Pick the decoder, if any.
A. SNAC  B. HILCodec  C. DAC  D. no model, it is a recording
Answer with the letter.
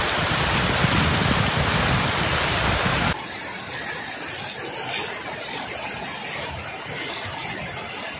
D